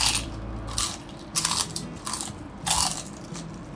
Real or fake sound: fake